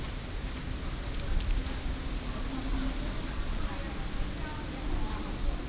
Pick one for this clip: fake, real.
real